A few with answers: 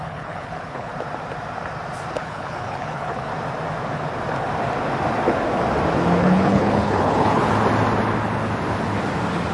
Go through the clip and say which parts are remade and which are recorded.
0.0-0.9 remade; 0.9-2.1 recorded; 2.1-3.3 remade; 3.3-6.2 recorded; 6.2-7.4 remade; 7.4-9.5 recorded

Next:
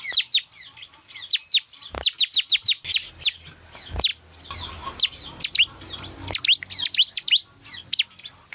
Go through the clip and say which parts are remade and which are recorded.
0.0-8.5 recorded

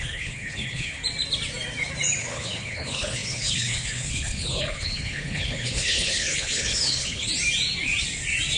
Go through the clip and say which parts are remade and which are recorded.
0.0-1.0 remade; 1.0-2.2 recorded; 2.2-7.3 remade; 7.3-8.6 recorded

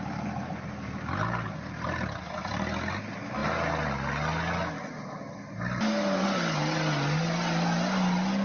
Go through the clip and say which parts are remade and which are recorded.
0.0-8.4 recorded

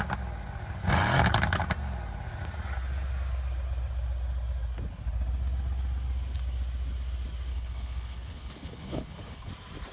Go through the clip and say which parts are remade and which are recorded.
0.0-7.5 recorded; 7.5-9.5 remade; 9.5-9.9 recorded

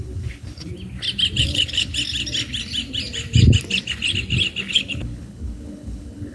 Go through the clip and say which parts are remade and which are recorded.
0.0-0.7 remade; 0.7-1.4 recorded; 1.4-1.9 remade; 1.9-4.7 recorded; 4.7-6.3 remade

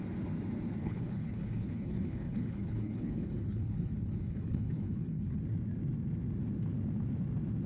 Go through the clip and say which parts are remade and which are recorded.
0.0-0.8 recorded; 0.8-5.4 remade; 5.4-7.7 recorded

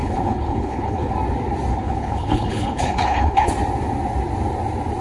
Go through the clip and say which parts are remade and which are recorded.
0.0-1.1 remade; 1.1-1.7 recorded; 1.7-3.5 remade; 3.5-5.0 recorded